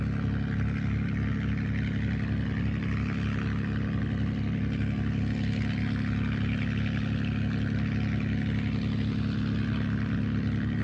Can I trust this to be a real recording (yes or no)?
yes